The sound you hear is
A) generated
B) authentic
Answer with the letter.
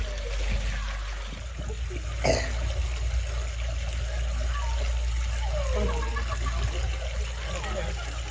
B